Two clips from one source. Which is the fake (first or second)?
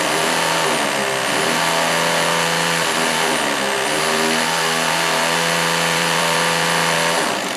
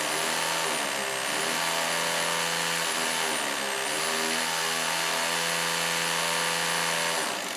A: first